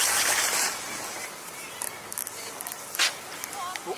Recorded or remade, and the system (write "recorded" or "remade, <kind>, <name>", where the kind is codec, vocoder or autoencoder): recorded